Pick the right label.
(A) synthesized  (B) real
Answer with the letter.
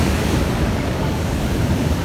A